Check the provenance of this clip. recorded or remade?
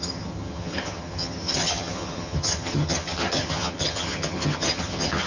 remade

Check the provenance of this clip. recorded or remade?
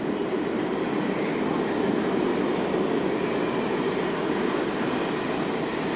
recorded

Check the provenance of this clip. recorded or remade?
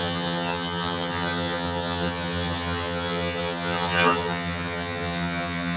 remade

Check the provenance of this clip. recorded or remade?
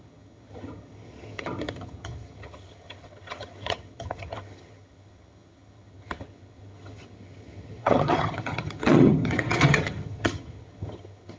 remade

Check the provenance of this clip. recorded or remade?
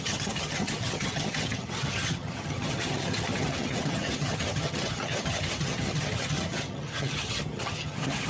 remade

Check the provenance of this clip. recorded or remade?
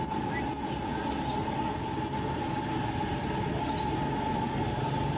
recorded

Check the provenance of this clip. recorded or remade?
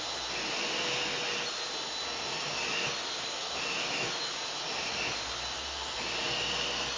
recorded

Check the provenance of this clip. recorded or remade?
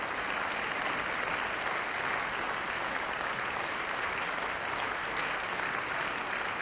recorded